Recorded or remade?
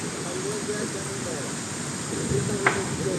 recorded